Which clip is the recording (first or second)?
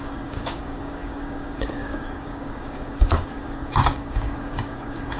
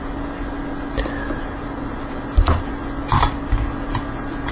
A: second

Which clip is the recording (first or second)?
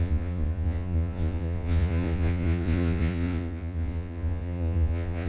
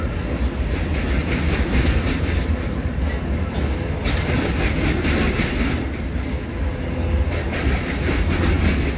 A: second